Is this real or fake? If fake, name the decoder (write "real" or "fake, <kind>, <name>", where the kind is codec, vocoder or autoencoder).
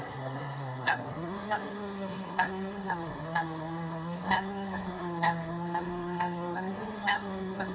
fake, codec, SNAC